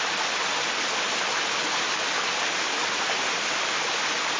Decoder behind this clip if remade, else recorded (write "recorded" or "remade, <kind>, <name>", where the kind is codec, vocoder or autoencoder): recorded